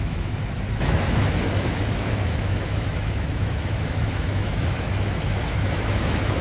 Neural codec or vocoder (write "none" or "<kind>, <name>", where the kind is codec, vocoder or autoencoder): autoencoder, DAC-VAE